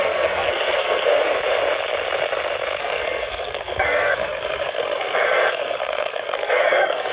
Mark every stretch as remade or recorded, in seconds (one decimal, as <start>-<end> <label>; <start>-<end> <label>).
0.0-1.1 remade; 1.1-2.8 recorded; 2.8-7.1 remade